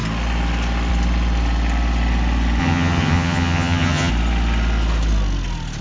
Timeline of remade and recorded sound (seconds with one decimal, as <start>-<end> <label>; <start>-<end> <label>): 0.0-2.6 recorded; 2.6-4.1 remade; 4.1-5.8 recorded